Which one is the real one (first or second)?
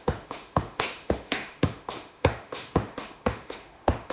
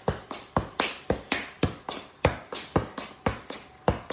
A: second